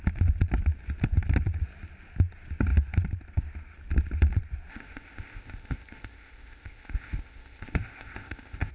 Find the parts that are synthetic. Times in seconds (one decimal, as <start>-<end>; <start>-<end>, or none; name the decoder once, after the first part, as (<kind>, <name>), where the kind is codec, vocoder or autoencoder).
4.7-8.7 (codec, ZipCodec)